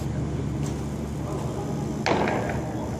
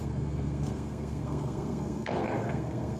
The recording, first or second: first